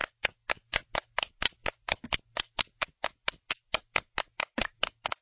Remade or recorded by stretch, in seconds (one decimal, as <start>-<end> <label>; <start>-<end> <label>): 0.0-5.2 recorded